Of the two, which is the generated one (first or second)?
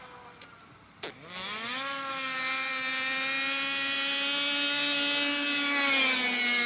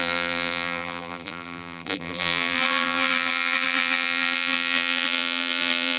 second